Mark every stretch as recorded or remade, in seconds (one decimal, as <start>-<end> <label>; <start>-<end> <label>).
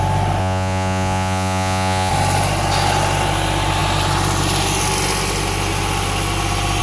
0.0-0.4 recorded; 0.4-2.1 remade; 2.1-6.8 recorded